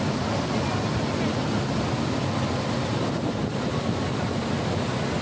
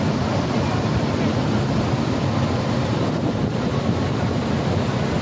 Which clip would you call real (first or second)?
first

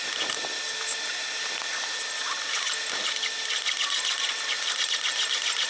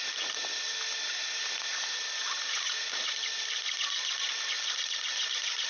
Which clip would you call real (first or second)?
first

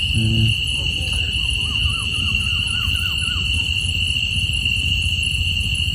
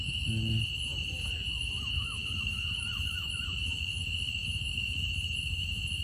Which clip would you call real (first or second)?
first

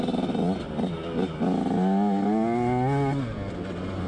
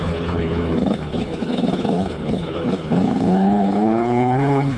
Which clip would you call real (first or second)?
first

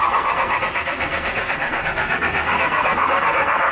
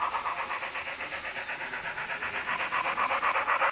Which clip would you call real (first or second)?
second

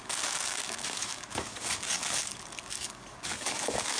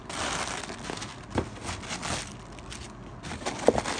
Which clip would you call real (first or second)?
second